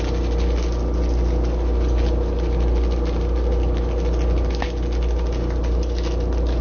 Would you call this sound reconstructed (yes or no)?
no